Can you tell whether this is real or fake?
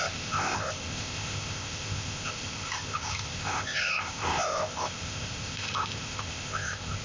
fake